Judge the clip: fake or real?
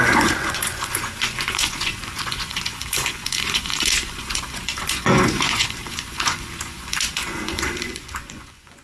fake